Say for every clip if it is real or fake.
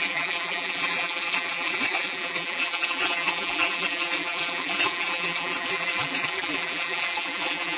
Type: fake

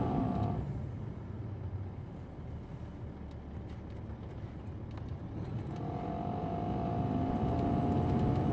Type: real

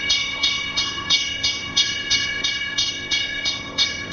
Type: fake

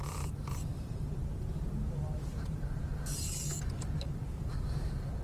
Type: fake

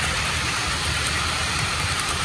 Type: fake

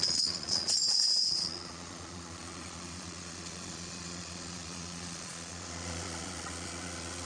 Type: fake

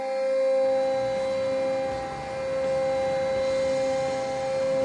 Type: real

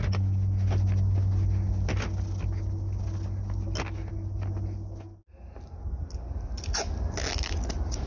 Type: real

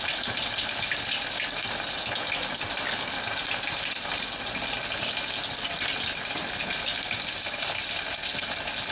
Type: real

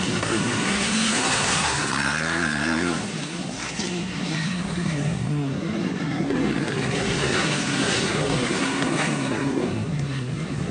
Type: fake